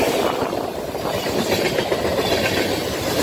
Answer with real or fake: fake